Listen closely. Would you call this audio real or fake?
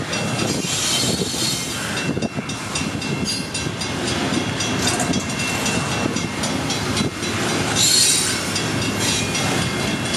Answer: real